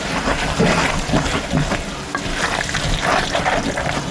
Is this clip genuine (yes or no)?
yes